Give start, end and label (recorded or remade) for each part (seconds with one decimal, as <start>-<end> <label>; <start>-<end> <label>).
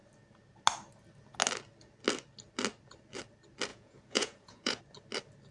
0.0-3.7 recorded; 3.7-4.8 remade; 4.8-5.5 recorded